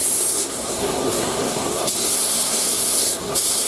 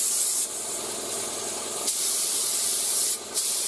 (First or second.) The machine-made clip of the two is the first